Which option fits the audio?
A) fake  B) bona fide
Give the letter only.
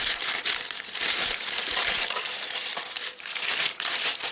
A